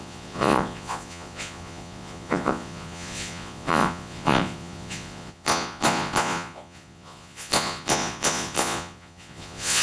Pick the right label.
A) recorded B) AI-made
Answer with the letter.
B